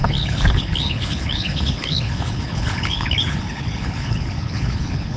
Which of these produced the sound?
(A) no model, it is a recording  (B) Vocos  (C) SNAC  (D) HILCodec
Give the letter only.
D